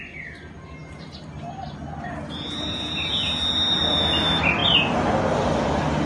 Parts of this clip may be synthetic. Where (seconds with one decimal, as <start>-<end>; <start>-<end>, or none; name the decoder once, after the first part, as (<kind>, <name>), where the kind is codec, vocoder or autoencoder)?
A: none